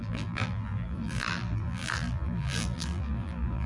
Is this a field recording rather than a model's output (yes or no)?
no